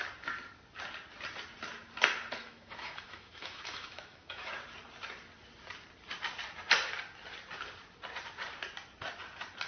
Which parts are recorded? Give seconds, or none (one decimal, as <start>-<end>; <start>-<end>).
0.0-2.4; 4.5-9.7